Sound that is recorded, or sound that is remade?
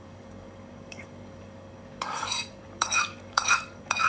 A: remade